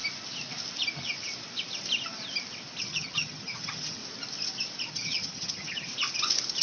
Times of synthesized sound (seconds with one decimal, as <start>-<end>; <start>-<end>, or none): 2.8-4.0; 4.9-5.9